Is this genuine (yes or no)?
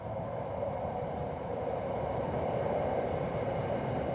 no